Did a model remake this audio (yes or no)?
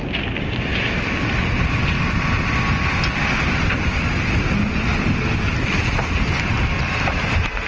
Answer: no